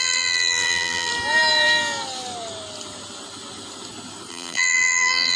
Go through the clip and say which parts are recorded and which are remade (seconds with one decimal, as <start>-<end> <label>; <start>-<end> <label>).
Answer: 0.0-1.1 remade; 1.1-4.3 recorded; 4.3-5.4 remade

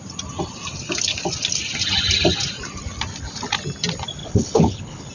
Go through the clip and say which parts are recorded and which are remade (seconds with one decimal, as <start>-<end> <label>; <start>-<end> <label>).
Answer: 0.0-4.2 recorded; 4.2-5.1 remade

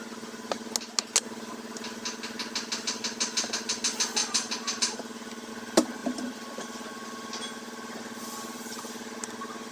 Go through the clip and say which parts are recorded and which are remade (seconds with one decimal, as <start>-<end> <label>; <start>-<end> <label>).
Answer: 0.0-4.2 recorded; 4.2-5.5 remade; 5.5-6.0 recorded; 6.0-8.8 remade; 8.8-9.7 recorded

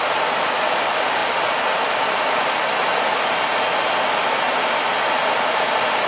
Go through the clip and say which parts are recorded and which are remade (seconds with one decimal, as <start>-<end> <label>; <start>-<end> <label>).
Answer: 0.0-6.1 recorded

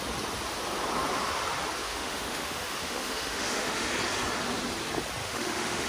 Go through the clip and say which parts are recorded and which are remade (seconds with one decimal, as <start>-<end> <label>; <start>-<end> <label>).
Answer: 0.0-1.8 recorded; 1.8-3.9 remade; 3.9-5.2 recorded; 5.2-5.9 remade

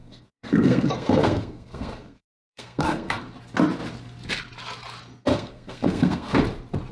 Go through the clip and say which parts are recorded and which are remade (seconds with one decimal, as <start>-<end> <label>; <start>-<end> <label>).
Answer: 0.0-3.2 remade; 3.2-5.3 recorded; 5.3-6.4 remade; 6.4-6.9 recorded

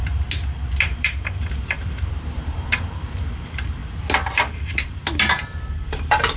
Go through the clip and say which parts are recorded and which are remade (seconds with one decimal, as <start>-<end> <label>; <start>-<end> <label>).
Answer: 0.0-0.8 recorded; 0.8-3.8 remade; 3.8-4.3 recorded; 4.3-5.0 remade; 5.0-5.9 recorded; 5.9-6.4 remade